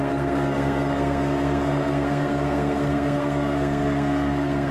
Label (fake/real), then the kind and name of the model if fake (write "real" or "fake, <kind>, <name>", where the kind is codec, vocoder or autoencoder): fake, codec, SNAC